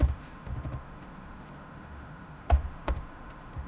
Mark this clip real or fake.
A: fake